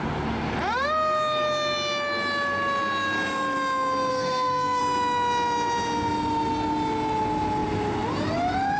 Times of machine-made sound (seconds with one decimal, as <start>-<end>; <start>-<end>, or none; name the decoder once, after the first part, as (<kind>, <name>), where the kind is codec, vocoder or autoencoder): 4.1-4.8 (codec, SNAC)